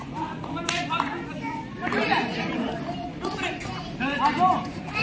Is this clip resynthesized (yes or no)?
no